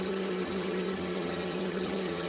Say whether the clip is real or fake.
fake